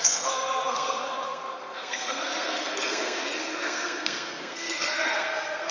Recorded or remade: remade